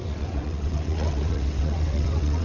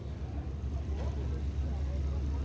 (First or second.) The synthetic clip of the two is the first